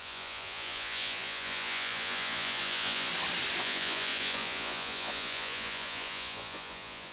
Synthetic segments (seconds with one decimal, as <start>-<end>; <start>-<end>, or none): 0.0-3.1; 3.6-7.1